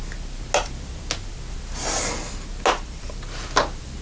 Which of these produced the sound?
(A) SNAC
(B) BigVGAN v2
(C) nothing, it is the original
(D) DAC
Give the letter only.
C